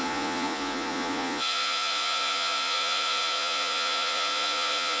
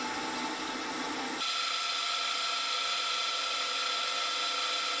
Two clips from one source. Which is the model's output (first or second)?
first